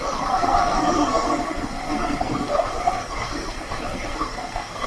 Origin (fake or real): fake